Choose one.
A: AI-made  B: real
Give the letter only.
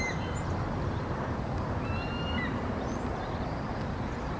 B